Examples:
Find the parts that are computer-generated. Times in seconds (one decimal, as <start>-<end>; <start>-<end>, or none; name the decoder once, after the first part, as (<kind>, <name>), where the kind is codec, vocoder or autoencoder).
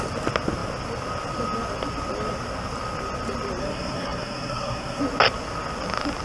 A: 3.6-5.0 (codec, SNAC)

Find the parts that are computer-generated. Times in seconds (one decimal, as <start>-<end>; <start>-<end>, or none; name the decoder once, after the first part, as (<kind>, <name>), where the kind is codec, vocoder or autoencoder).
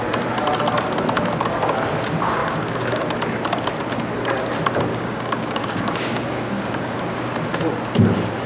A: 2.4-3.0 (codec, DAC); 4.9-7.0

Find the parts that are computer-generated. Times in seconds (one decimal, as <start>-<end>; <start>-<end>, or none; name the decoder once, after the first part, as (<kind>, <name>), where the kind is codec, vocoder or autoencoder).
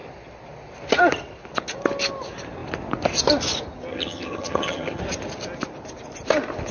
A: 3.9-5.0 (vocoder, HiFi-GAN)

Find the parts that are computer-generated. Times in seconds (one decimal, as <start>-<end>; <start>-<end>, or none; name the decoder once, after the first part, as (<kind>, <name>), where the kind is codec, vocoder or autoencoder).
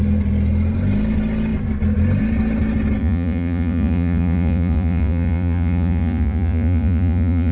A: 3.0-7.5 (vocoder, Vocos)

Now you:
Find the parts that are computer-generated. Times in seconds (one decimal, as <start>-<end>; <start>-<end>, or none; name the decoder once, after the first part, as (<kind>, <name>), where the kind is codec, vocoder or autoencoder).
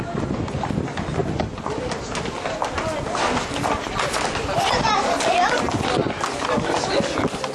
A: none